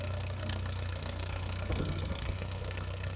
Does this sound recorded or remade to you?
remade